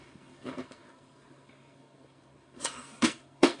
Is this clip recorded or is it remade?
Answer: remade